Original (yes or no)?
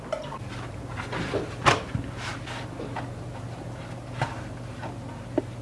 yes